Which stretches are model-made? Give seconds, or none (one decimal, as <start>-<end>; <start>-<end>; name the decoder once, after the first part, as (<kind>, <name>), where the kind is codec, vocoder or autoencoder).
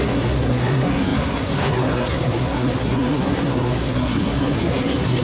0.0-5.2 (codec, SNAC)